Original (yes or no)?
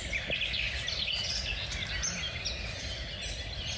yes